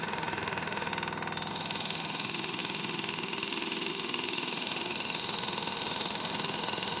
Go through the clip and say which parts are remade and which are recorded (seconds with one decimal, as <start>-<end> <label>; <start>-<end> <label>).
0.0-0.9 remade; 0.9-1.5 recorded; 1.5-7.0 remade